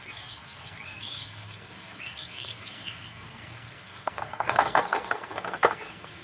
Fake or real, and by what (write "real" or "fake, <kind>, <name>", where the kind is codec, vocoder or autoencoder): fake, codec, SNAC